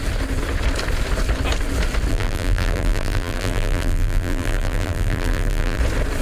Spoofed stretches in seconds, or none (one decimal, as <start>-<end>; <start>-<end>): 2.1-5.8